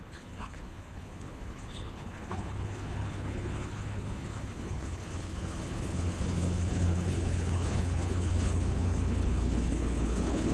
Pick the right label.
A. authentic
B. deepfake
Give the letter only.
B